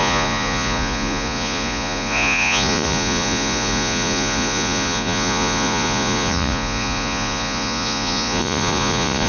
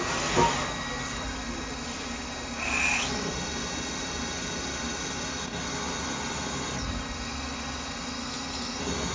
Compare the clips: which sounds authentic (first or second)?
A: second